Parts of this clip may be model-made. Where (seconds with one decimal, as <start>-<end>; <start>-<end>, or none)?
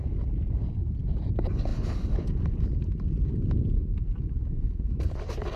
none